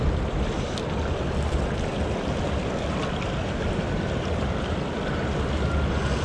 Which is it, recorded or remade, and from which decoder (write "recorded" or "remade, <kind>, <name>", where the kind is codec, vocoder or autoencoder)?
recorded